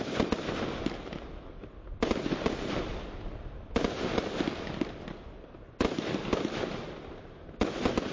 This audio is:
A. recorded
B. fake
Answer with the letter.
A